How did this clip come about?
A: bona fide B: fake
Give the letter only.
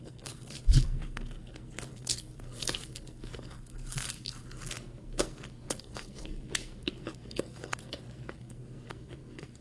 B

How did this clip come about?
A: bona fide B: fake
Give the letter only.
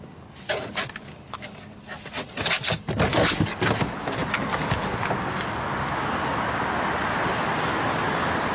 A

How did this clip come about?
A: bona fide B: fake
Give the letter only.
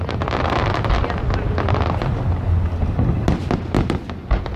A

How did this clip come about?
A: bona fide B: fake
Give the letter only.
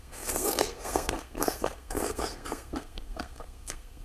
B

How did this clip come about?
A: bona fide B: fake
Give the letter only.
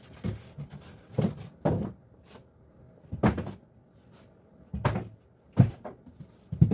A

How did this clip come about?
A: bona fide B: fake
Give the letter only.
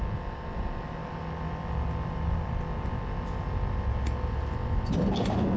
A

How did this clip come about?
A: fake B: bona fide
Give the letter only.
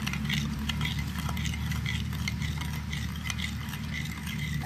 B